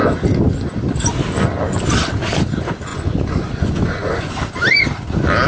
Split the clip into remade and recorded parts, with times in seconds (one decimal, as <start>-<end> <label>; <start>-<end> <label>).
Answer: 0.0-2.9 recorded; 2.9-4.3 remade; 4.3-5.5 recorded